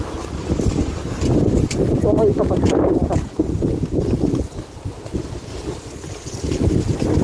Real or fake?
real